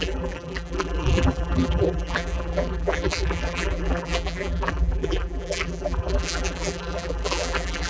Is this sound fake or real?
fake